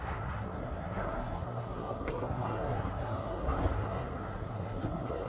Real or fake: fake